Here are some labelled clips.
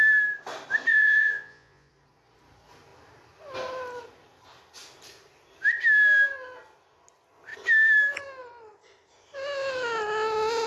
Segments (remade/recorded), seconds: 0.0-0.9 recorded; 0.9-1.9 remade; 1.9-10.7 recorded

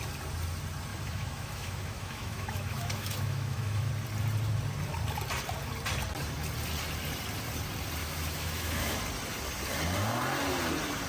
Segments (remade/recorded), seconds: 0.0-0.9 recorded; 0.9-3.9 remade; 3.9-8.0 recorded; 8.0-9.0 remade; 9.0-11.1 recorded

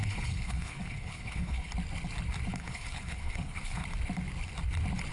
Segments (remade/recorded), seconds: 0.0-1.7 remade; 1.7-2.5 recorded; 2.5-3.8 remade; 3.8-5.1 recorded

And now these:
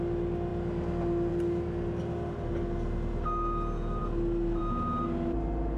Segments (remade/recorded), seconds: 0.0-5.8 recorded

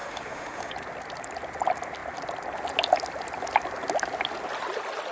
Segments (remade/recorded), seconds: 0.0-0.7 remade; 0.7-5.1 recorded